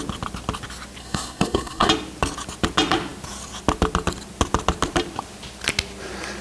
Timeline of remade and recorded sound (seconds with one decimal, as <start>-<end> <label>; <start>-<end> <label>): 0.0-1.0 recorded; 1.0-1.9 remade; 1.9-6.4 recorded